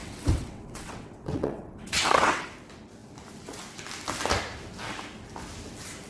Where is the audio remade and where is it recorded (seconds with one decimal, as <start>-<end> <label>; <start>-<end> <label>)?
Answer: 0.0-2.5 remade; 2.5-6.1 recorded